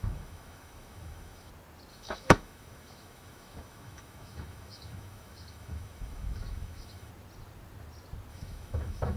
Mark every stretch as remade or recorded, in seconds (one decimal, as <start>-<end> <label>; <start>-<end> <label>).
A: 0.0-1.5 remade; 1.5-1.9 recorded; 1.9-7.1 remade; 7.1-8.3 recorded; 8.3-9.2 remade